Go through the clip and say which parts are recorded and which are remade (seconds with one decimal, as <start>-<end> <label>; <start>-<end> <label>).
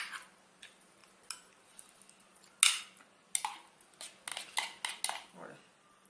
0.0-6.1 recorded